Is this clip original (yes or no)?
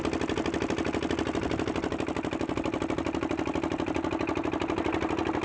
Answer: yes